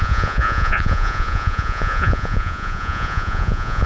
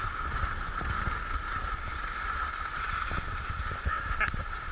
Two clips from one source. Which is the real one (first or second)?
second